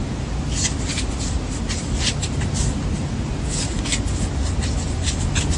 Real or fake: real